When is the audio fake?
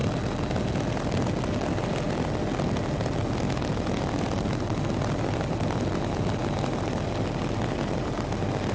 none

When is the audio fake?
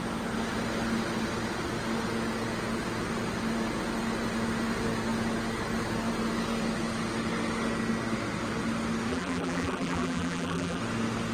9.1-10.8 (vocoder, BigVGAN v2)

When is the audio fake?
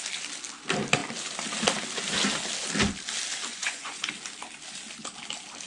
3.5-4.1 (vocoder, Vocos)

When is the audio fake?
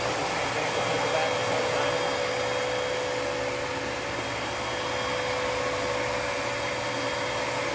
none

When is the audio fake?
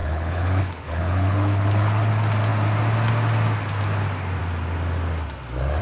0.0-2.1 (codec, HILCodec)